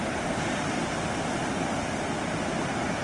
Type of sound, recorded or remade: recorded